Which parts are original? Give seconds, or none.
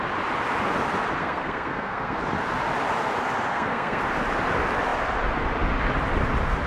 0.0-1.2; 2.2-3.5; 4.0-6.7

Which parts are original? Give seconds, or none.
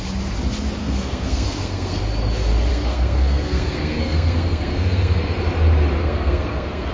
0.0-0.8; 2.0-2.7; 5.2-6.0